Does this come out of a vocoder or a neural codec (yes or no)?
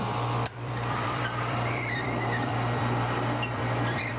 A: yes